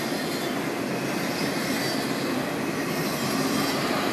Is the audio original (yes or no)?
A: yes